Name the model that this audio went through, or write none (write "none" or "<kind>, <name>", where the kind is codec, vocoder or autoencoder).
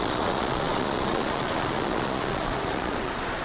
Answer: vocoder, Vocos